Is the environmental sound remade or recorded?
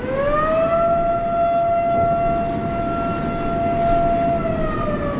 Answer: recorded